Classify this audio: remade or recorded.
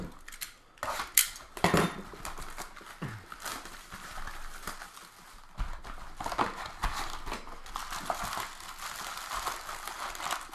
recorded